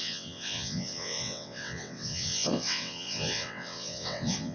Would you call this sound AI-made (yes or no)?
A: yes